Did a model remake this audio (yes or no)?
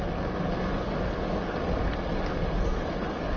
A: no